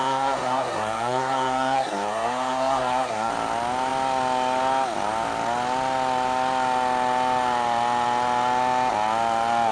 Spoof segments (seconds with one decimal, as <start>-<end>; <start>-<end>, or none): 0.0-3.3